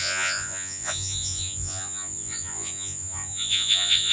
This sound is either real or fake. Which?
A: fake